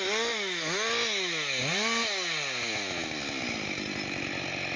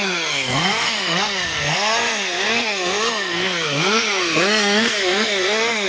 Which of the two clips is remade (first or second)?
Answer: second